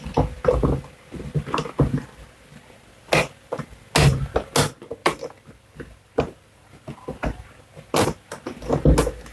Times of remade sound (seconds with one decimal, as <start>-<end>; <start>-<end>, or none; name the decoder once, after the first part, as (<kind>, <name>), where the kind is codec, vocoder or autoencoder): 5.0-6.0 (vocoder, BigVGAN v2)